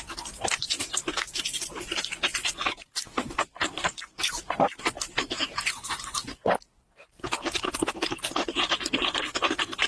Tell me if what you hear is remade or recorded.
recorded